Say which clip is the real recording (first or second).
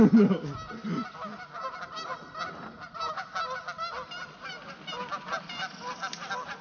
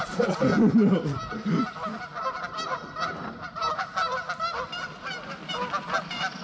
first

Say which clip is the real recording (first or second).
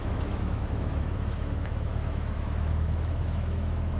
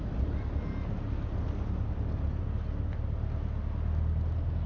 second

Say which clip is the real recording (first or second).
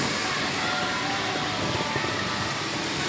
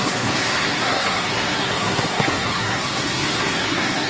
first